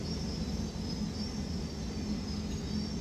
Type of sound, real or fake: real